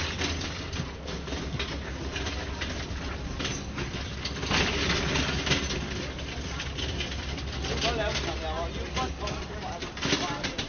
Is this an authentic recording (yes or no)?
yes